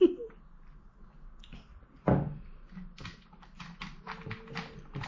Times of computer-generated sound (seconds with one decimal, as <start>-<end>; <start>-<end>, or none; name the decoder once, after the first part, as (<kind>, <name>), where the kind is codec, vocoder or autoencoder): none